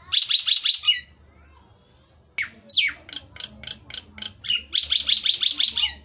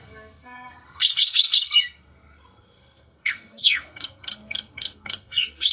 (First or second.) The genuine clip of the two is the first